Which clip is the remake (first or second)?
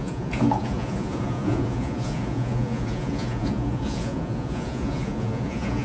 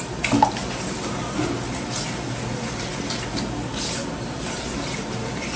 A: first